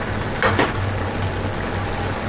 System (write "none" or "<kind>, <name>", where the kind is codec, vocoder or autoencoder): none